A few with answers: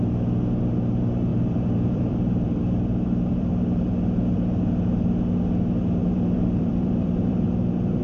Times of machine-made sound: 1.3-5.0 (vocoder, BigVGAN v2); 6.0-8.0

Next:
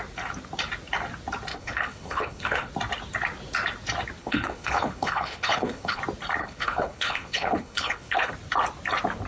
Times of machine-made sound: 1.5-2.7 (codec, HILCodec); 4.2-6.0; 6.4-8.3

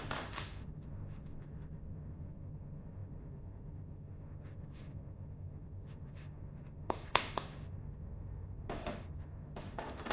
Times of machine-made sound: 0.0-10.1 (autoencoder, DAC-VAE)

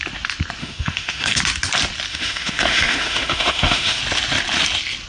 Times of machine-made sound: 0.6-1.4 (autoencoder, DAC-VAE); 2.1-4.0

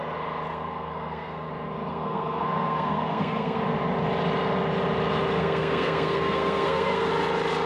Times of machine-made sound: 0.5-1.5 (codec, SNAC); 1.9-3.6; 5.4-7.1

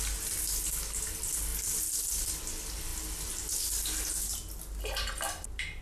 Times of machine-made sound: none